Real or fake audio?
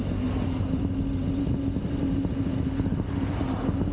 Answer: real